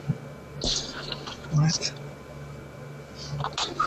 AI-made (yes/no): no